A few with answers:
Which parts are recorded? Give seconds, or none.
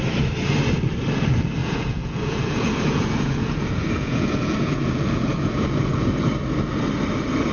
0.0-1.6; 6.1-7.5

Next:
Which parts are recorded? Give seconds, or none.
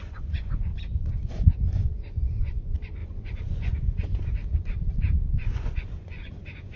0.7-1.2; 4.4-5.1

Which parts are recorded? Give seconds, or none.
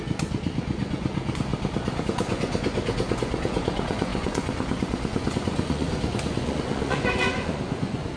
1.5-2.0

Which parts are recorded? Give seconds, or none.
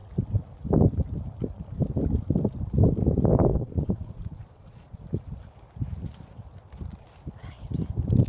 0.0-3.5; 5.0-8.3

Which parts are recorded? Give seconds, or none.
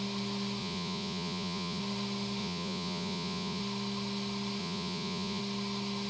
0.0-0.6; 1.8-2.4; 3.6-4.6; 5.4-6.1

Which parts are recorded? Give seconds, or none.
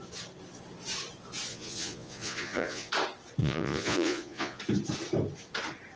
0.0-1.5; 2.9-3.4; 4.6-6.0